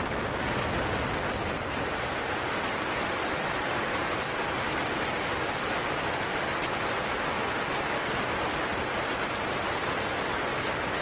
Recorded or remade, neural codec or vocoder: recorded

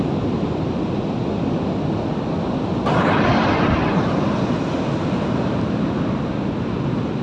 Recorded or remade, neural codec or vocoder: recorded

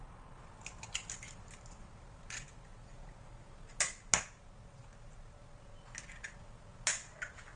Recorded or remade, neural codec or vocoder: recorded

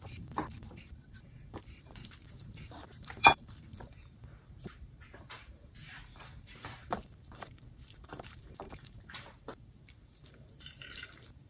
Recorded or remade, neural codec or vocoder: remade, vocoder, BigVGAN v2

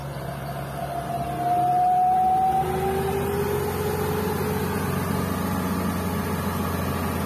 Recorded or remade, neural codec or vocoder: recorded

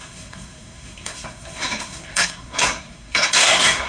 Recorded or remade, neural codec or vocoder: remade, codec, SNAC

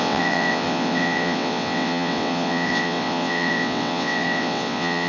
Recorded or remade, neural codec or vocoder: remade, vocoder, WaveNeXt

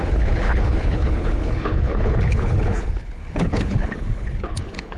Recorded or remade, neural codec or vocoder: remade, codec, HILCodec